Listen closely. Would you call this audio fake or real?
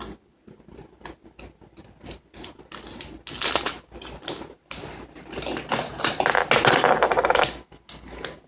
real